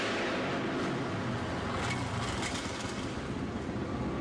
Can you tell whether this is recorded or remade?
recorded